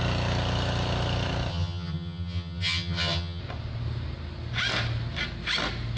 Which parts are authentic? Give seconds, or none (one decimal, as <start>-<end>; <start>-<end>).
0.0-1.5; 3.4-6.0